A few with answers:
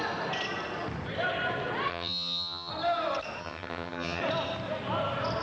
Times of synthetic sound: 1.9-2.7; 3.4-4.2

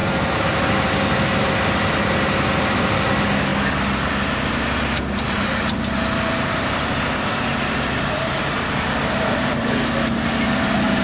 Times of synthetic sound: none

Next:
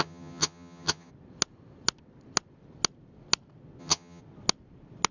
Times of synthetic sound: 0.0-1.1; 3.8-4.2